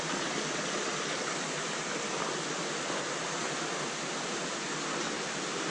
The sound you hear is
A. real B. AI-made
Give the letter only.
A